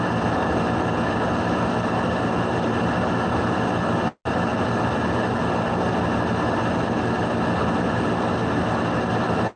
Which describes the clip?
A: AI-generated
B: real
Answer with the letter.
B